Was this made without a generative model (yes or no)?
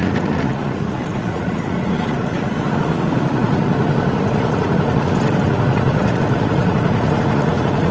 no